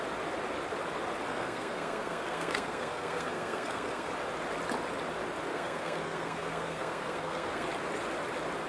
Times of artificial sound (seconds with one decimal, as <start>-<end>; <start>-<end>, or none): 1.3-4.1; 5.5-7.7